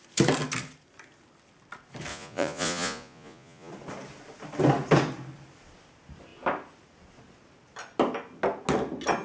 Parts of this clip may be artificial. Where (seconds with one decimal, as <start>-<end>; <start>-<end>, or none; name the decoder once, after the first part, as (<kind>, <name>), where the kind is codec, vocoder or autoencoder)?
2.1-3.7 (vocoder, Vocos)